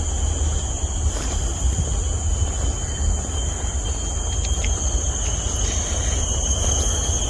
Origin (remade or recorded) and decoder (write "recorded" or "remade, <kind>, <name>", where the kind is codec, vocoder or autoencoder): recorded